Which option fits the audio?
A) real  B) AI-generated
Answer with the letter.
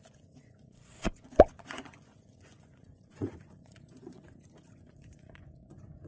B